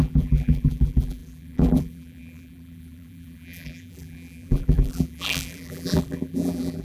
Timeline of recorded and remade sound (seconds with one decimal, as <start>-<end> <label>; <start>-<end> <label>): 0.0-6.8 remade

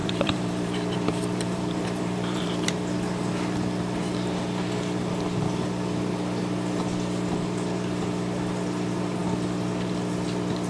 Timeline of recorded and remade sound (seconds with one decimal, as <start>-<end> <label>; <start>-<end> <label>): 0.0-2.7 remade; 2.7-10.7 recorded

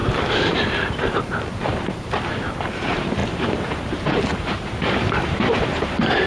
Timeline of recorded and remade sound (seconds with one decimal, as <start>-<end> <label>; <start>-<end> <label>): 0.0-0.5 recorded; 0.5-6.3 remade

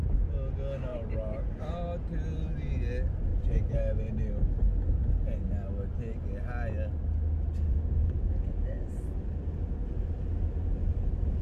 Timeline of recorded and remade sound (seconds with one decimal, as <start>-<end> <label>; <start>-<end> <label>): 0.0-0.9 recorded; 0.9-1.7 remade; 1.7-3.3 recorded; 3.3-4.0 remade; 4.0-8.0 recorded; 8.0-9.0 remade; 9.0-11.4 recorded

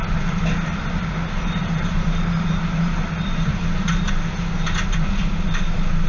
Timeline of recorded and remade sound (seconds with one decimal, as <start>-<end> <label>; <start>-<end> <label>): 0.0-1.6 recorded; 1.6-3.1 remade; 3.1-3.5 recorded; 3.5-4.1 remade; 4.1-6.1 recorded

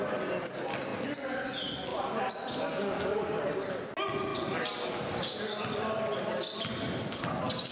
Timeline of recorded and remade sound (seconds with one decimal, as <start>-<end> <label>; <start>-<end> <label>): 0.0-1.9 recorded; 1.9-3.7 remade; 3.7-7.7 recorded

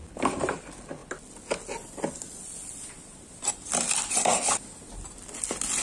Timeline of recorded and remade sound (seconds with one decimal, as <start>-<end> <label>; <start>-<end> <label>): 0.0-5.8 recorded

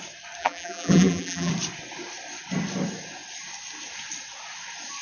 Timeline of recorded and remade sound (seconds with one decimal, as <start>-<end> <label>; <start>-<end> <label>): 0.0-0.4 recorded; 0.4-1.5 remade; 1.5-5.0 recorded